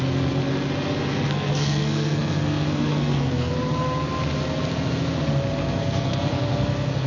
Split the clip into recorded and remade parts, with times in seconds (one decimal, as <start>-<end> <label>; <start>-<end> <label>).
0.0-1.1 recorded; 1.1-3.5 remade; 3.5-5.6 recorded; 5.6-7.1 remade